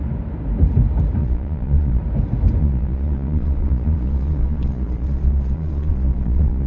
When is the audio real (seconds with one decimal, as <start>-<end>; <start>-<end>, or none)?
0.0-1.2; 2.0-2.6